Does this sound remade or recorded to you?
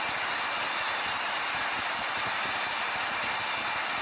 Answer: recorded